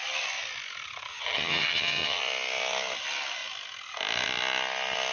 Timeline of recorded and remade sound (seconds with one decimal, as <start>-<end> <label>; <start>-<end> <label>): 0.0-1.1 recorded; 1.1-2.2 remade; 2.2-5.1 recorded